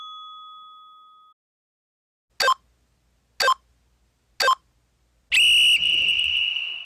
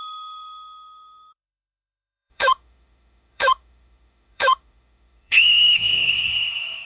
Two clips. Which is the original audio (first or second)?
first